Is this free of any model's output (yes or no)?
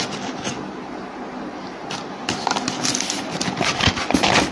yes